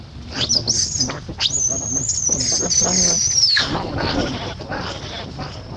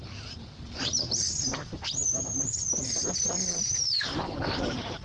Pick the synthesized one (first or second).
second